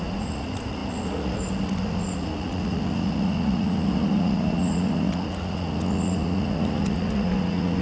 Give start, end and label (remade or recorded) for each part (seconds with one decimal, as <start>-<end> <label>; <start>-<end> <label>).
0.0-7.8 remade